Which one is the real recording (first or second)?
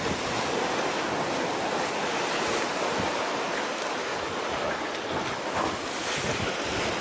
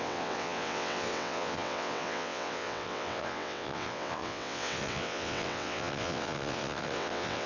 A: first